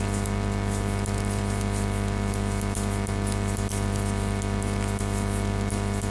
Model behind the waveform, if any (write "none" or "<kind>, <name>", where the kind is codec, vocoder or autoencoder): none